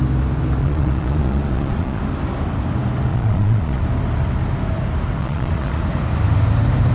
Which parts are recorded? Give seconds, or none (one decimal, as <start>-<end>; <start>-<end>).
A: 0.0-0.6; 2.0-3.1; 3.8-5.2; 5.8-6.9